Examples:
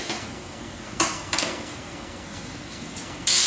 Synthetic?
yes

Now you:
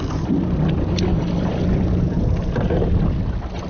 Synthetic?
no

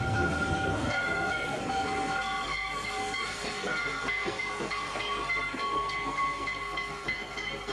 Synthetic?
yes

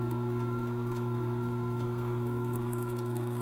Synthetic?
yes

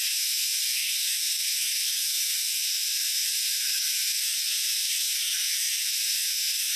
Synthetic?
yes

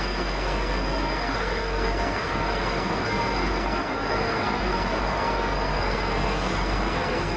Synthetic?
yes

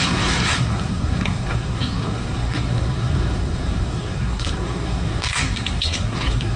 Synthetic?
yes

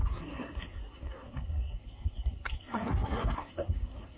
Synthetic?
yes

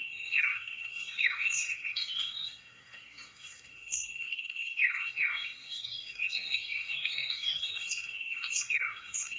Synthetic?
yes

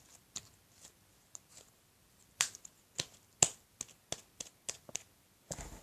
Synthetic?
no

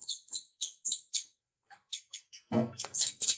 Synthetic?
yes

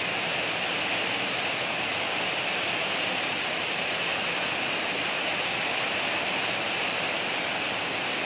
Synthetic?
no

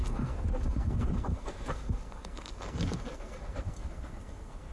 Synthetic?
yes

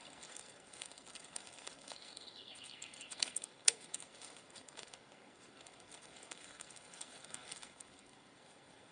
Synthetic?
yes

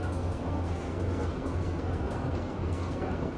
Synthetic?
yes